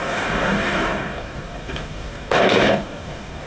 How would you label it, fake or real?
fake